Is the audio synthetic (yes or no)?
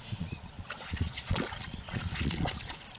yes